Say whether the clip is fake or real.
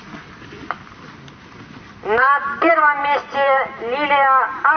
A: fake